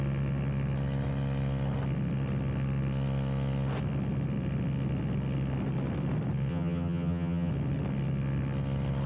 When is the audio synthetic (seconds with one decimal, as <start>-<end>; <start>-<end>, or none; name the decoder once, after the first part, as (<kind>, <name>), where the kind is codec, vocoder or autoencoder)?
6.5-7.5 (vocoder, HiFi-GAN)